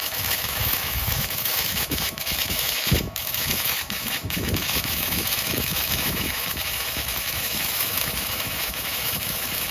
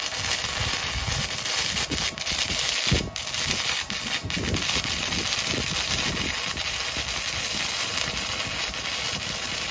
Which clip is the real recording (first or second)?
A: second